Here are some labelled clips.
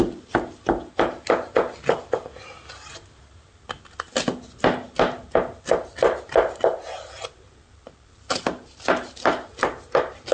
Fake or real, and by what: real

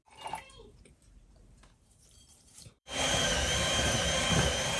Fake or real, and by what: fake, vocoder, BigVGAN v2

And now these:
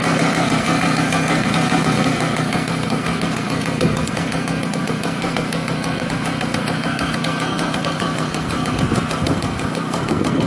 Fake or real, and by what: fake, codec, SNAC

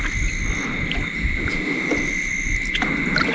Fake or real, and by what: real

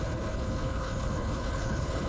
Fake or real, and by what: fake, codec, HILCodec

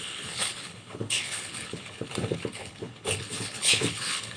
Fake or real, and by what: fake, codec, HILCodec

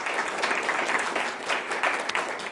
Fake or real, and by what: real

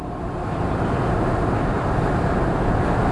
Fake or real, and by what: real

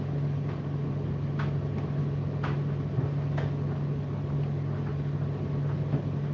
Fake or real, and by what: real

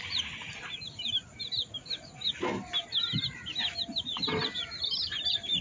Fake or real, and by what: real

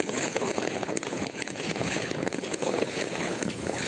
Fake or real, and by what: fake, codec, HILCodec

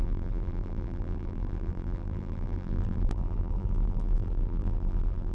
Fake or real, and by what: fake, vocoder, BigVGAN v2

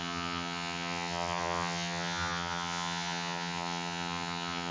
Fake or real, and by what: fake, vocoder, HiFi-GAN